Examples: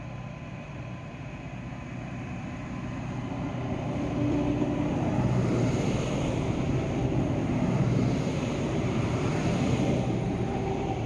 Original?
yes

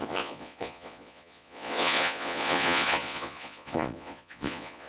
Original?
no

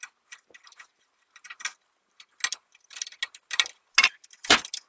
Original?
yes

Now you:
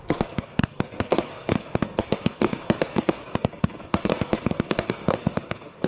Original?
no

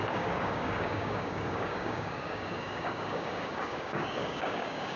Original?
no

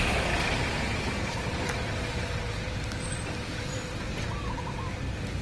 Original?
yes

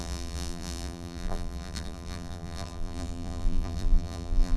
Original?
no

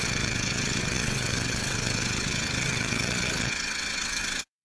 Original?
no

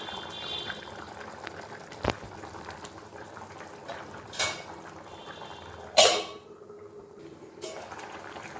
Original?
no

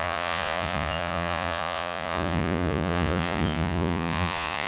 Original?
no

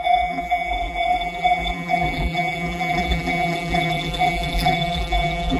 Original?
no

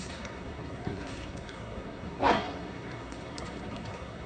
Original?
no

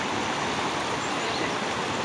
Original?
yes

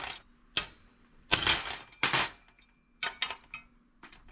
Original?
yes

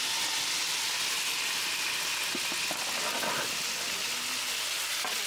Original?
yes